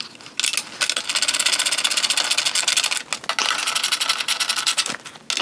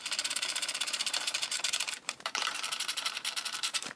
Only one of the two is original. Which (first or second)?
first